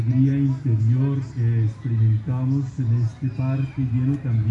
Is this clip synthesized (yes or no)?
no